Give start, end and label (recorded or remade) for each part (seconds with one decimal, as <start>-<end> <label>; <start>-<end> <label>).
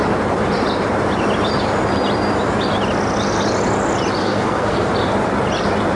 0.0-4.2 recorded; 4.2-4.9 remade; 4.9-6.0 recorded